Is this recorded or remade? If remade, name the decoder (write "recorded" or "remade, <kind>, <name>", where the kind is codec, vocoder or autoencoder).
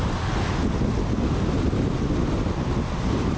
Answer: recorded